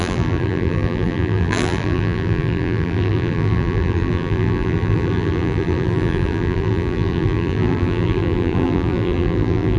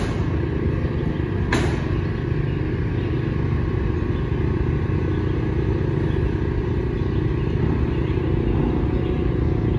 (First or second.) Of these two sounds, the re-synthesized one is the first